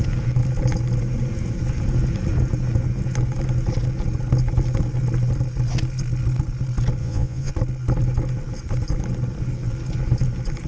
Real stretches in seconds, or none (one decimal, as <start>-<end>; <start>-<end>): 0.0-7.0; 7.5-10.7